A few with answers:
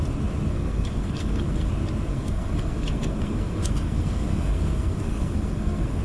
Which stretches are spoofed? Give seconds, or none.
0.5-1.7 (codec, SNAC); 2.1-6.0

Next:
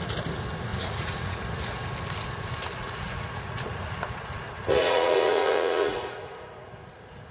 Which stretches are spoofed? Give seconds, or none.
0.7-1.4 (vocoder, Vocos); 2.8-7.3

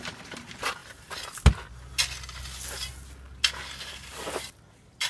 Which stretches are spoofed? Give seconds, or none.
none

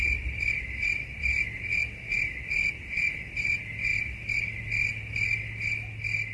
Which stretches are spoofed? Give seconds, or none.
none